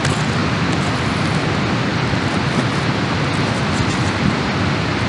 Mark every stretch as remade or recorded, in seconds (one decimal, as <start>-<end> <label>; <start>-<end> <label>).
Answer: 0.0-5.1 recorded